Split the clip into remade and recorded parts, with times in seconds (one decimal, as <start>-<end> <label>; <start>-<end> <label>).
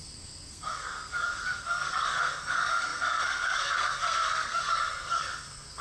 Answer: 0.0-5.8 remade